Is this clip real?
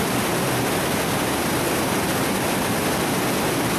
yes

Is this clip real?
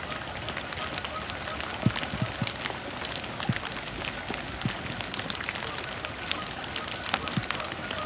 yes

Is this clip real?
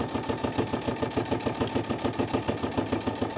yes